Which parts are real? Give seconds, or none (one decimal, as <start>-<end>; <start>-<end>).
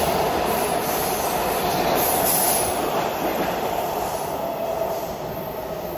0.0-3.3; 4.3-6.0